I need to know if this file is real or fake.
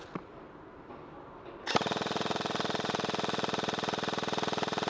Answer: real